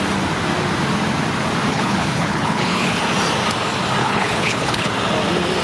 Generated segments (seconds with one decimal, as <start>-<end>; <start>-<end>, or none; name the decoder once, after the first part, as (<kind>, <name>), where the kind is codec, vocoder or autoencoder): 1.7-3.0 (codec, HILCodec); 4.0-4.9